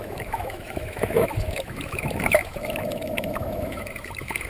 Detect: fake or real fake